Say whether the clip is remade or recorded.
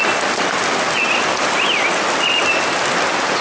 recorded